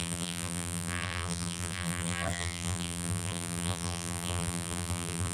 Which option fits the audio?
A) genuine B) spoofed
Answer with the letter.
B